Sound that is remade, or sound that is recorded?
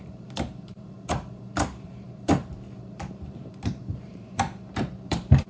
remade